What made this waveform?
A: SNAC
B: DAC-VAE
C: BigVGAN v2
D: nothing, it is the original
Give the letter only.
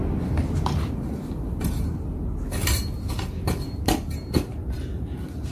D